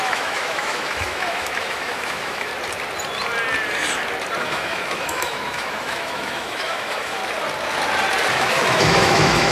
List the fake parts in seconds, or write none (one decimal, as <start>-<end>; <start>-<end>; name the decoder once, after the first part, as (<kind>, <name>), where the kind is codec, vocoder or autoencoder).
0.0-2.5 (autoencoder, DAC-VAE); 4.4-7.2; 8.3-9.5

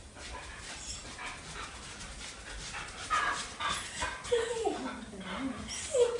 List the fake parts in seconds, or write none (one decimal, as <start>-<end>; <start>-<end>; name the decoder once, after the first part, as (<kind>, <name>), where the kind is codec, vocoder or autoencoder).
none

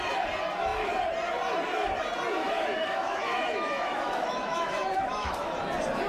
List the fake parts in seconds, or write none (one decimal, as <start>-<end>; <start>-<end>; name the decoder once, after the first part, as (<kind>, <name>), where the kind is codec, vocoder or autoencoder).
2.4-5.5 (autoencoder, DAC-VAE)

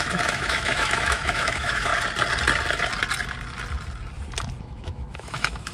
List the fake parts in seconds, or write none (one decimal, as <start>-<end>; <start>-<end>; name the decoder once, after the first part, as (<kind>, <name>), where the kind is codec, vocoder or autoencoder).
0.0-1.9 (autoencoder, DAC-VAE); 4.6-5.7

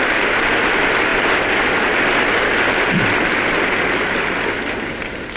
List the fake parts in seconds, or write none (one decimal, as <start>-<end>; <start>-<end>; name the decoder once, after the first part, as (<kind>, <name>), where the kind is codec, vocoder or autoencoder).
none

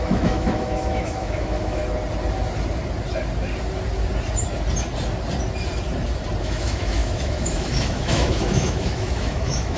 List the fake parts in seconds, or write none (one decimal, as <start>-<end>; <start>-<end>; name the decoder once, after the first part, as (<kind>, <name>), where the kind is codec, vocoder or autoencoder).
0.0-1.8 (autoencoder, DAC-VAE); 6.4-9.8

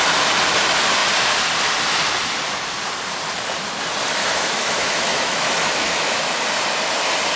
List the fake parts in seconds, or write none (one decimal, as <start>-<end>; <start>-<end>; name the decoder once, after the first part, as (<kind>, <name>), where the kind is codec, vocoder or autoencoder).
4.2-6.3 (autoencoder, DAC-VAE)